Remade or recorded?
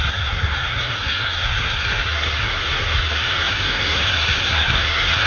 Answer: remade